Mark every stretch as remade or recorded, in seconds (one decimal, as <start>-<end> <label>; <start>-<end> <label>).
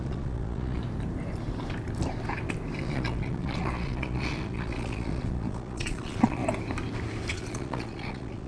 0.0-0.8 remade; 0.8-2.8 recorded; 2.8-6.4 remade; 6.4-7.3 recorded; 7.3-8.5 remade